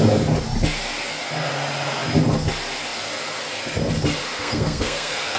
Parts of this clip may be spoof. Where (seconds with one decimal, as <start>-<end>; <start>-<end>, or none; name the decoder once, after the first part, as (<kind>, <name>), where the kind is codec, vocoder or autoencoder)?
4.2-5.4 (codec, SNAC)